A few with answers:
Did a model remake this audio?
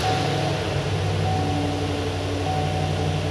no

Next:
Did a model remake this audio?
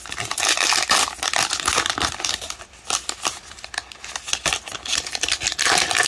no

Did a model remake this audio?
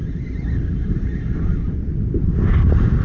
no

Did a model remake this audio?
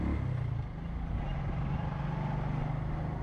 no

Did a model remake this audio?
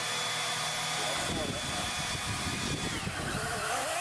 no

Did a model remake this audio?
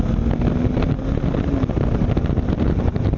no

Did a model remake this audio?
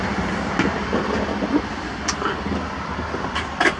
no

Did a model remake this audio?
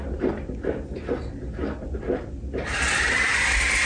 no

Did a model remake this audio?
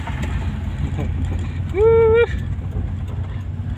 no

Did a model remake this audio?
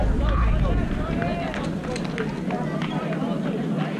no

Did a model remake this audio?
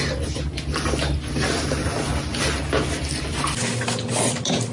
no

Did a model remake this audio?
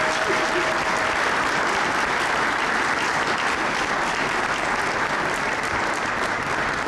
no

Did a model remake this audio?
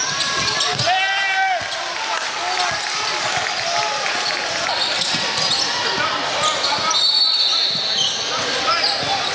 no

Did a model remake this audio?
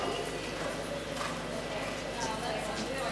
no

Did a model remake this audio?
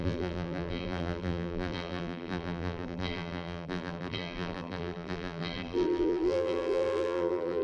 yes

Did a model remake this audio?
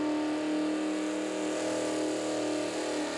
no